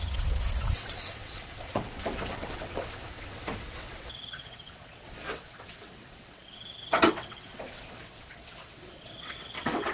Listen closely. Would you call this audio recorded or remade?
remade